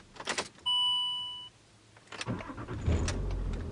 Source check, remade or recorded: recorded